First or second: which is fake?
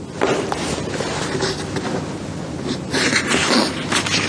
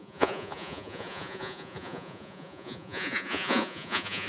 second